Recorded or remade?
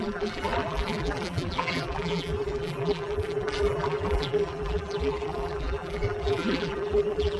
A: remade